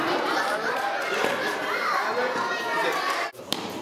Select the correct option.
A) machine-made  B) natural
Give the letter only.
A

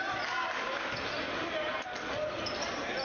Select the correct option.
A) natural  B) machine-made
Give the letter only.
A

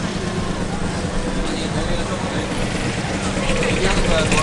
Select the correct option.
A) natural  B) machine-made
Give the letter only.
A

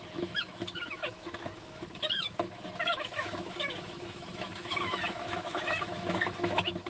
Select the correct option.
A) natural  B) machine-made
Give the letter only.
B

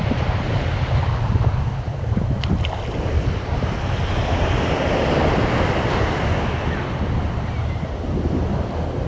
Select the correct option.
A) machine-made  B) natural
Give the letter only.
B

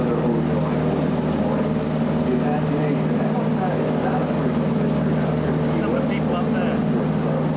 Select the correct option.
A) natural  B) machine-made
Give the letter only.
A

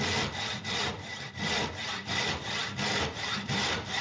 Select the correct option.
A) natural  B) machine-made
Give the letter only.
B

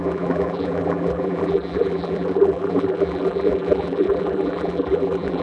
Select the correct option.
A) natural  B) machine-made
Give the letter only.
B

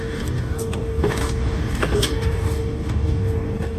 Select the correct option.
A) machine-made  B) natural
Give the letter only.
A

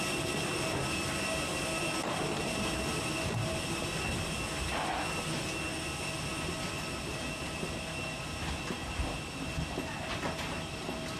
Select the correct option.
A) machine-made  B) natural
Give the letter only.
B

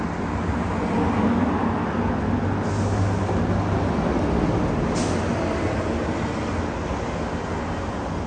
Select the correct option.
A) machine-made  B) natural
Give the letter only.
B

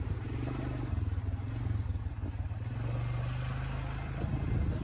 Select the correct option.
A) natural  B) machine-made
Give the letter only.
A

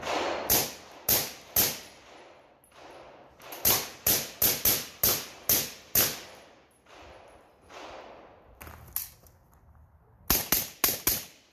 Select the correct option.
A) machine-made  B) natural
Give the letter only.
B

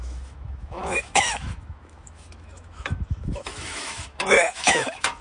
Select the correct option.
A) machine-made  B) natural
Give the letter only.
A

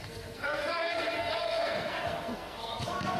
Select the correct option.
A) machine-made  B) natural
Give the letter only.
A